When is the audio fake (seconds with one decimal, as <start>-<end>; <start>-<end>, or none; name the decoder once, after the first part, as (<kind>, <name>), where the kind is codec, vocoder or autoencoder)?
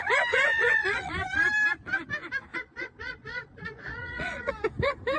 0.5-1.1 (vocoder, Vocos); 2.5-4.5